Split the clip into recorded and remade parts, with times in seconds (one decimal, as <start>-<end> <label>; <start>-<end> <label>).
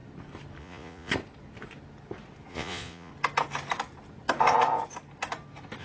0.0-0.6 recorded; 0.6-1.1 remade; 1.1-2.5 recorded; 2.5-3.1 remade; 3.1-5.8 recorded